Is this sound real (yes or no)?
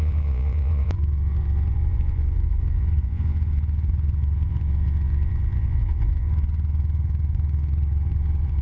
no